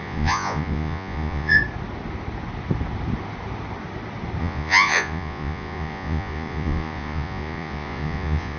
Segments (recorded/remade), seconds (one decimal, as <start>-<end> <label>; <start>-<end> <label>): 0.0-1.6 remade; 1.6-4.4 recorded; 4.4-8.6 remade